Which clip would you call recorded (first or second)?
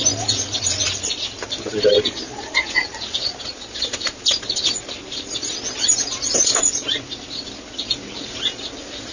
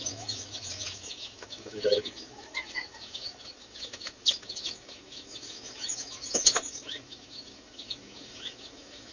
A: first